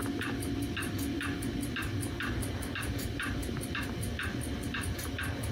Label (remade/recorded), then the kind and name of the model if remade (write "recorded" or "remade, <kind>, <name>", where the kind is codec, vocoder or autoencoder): recorded